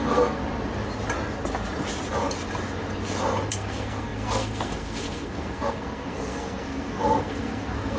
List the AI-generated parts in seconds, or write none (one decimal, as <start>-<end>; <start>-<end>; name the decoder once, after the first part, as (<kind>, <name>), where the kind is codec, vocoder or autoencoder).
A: 0.0-0.4 (codec, SNAC); 3.5-8.0